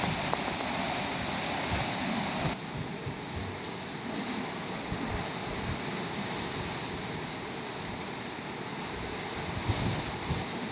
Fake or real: real